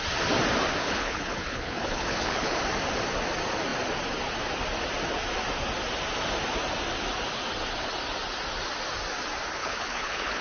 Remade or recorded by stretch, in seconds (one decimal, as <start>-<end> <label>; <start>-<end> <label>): 0.0-0.8 recorded; 0.8-2.6 remade; 2.6-9.6 recorded; 9.6-10.4 remade